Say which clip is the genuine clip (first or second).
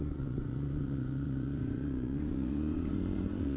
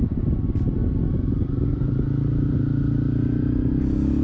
second